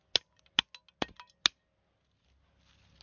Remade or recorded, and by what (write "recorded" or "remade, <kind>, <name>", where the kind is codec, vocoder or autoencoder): recorded